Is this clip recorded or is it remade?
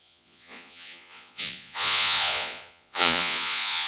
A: remade